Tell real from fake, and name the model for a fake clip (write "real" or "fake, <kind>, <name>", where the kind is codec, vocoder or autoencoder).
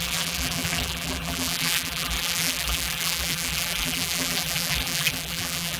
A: fake, vocoder, BigVGAN v2